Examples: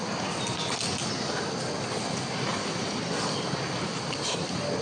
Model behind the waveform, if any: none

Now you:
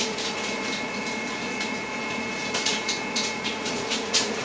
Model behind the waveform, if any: vocoder, Vocos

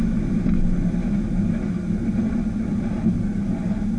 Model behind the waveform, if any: none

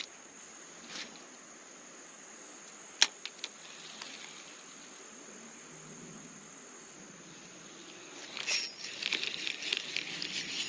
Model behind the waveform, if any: none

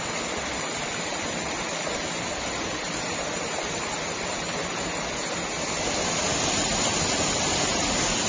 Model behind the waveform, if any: none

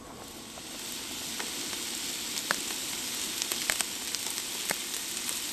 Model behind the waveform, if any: none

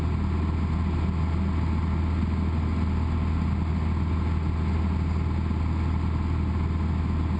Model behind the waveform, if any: none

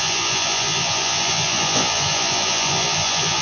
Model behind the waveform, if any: vocoder, Vocos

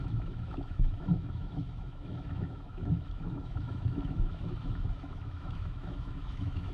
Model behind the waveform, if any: autoencoder, DAC-VAE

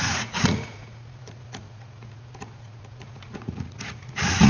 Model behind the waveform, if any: vocoder, Vocos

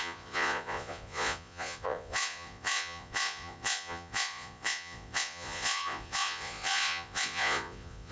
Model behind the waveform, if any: vocoder, Vocos